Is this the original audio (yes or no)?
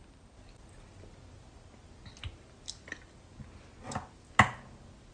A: yes